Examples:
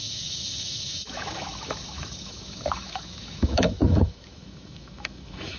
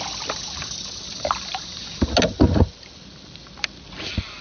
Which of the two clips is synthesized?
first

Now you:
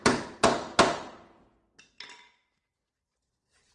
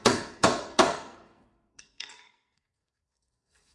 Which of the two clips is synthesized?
second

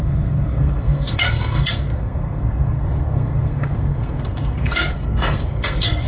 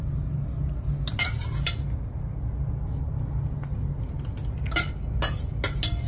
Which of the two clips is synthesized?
first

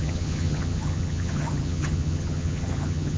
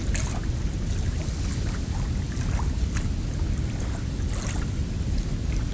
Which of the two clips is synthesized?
first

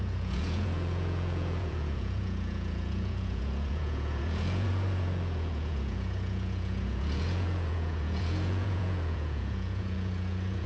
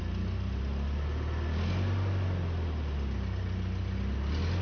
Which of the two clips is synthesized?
first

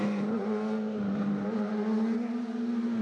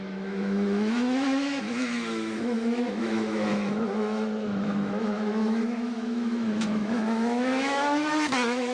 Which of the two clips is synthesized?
second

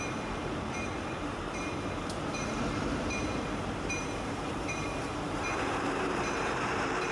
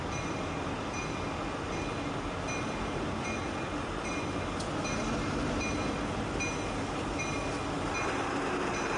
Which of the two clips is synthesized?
first